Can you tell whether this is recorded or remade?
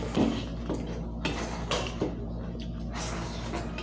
recorded